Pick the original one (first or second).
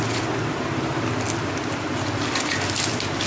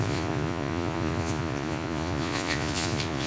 first